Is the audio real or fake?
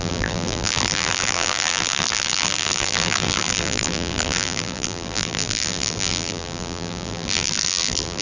fake